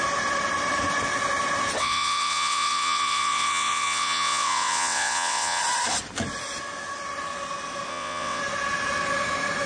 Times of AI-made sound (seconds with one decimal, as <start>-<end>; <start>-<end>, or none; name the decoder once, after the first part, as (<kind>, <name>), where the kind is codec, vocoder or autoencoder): 1.8-5.6 (vocoder, WaveNeXt); 7.9-8.4